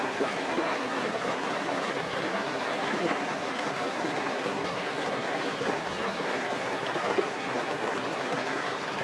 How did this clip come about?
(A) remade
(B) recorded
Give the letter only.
A